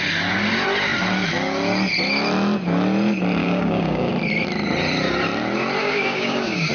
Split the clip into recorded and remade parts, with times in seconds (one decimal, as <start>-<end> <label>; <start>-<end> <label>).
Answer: 0.0-3.4 recorded; 3.4-4.1 remade; 4.1-5.8 recorded; 5.8-6.7 remade